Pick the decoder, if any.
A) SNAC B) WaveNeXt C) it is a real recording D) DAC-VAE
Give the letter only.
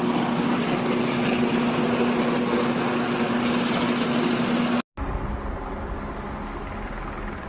C